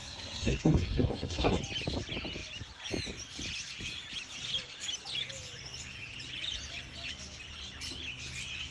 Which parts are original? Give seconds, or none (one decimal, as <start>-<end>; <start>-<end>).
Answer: 1.6-8.7